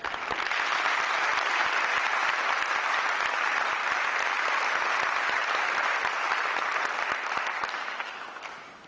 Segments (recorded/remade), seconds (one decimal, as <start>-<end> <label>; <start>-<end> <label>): 0.0-8.9 recorded